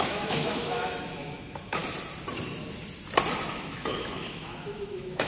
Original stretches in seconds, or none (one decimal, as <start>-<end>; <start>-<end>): 1.8-3.5